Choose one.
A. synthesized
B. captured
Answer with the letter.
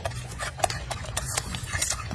A